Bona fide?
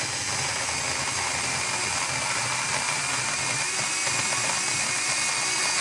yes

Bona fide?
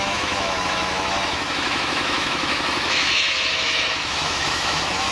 no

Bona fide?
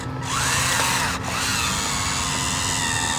yes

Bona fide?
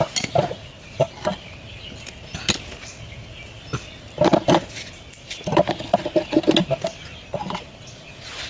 yes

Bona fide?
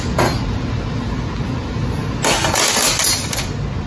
yes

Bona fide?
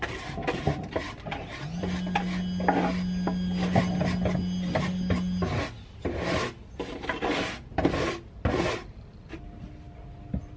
yes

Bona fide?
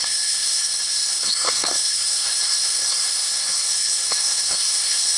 no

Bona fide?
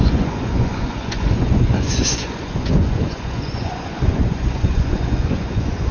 no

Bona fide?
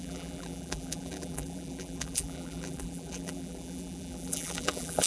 no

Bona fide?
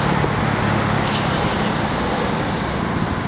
yes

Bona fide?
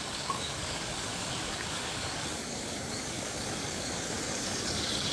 no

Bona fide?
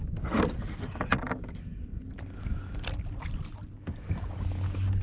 yes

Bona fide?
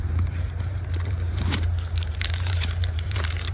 no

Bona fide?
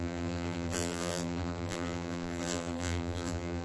no